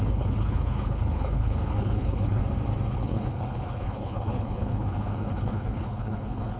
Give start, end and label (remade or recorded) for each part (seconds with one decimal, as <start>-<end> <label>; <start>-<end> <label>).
0.0-2.4 remade; 2.4-2.9 recorded; 2.9-6.6 remade